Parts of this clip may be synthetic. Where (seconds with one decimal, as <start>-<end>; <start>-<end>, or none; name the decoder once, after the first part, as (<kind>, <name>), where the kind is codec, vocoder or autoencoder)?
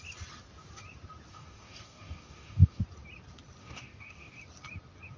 1.3-2.8 (codec, DAC); 3.6-4.4